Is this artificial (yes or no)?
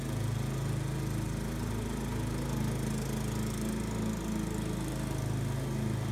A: no